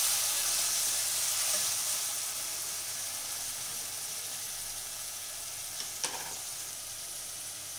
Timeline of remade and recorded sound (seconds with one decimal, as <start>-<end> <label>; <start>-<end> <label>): 0.0-4.8 recorded; 4.8-5.3 remade; 5.3-7.8 recorded